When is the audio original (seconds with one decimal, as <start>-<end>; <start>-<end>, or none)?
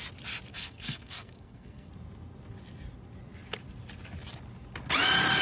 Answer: 0.0-0.5; 1.9-5.4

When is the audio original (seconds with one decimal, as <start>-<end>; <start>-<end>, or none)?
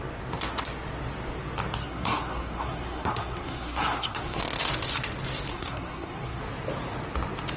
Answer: 0.0-1.8; 4.4-5.5; 6.4-7.6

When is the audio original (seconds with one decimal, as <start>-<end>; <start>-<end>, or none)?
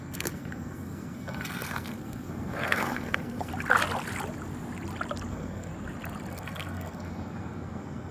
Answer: 3.5-5.3; 5.7-6.3